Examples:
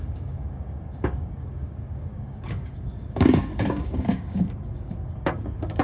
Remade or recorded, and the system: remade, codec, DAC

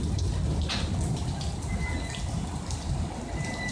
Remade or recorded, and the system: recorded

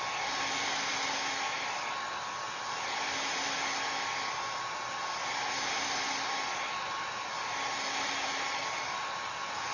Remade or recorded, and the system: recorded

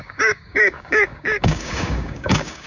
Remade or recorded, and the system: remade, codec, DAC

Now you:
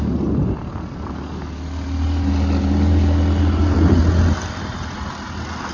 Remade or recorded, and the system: recorded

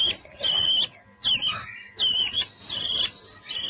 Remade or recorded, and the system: recorded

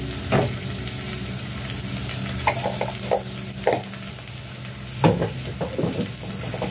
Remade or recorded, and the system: recorded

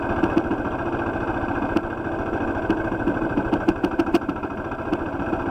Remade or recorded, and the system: recorded